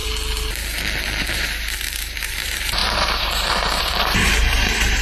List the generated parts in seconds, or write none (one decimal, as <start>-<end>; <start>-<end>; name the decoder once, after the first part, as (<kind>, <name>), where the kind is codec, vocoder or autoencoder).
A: 1.2-5.0 (vocoder, BigVGAN v2)